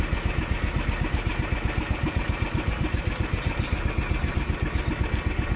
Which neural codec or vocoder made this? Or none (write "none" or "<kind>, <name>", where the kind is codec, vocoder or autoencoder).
none